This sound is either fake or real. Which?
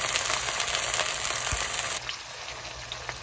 real